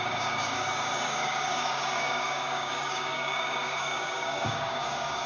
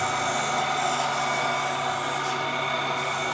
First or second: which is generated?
first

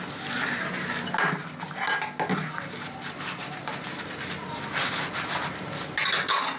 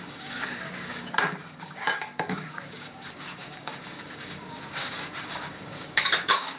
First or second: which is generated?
second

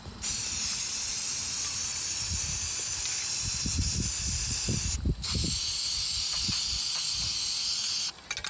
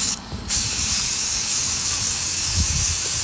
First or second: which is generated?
second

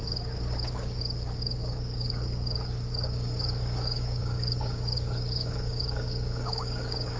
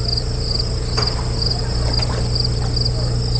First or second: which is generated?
first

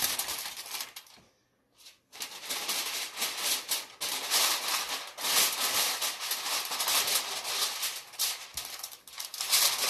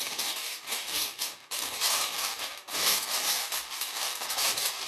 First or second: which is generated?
second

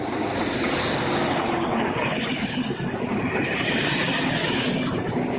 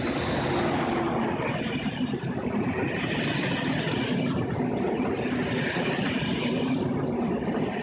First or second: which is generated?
first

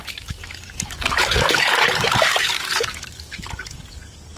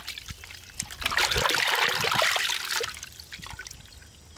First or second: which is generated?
first